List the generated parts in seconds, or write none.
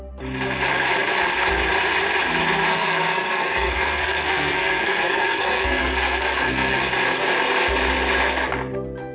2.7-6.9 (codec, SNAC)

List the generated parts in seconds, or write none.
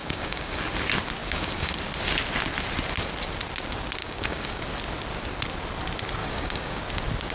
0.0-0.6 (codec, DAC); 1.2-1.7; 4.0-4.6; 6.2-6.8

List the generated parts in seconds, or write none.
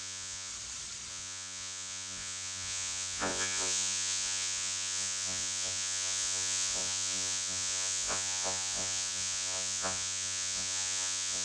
0.0-0.5 (vocoder, Vocos); 1.1-11.4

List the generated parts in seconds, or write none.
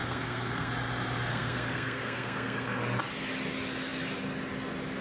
0.0-0.7 (codec, SNAC); 1.3-2.8